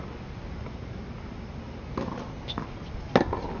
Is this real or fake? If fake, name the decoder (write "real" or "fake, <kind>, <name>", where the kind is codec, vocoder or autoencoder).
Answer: real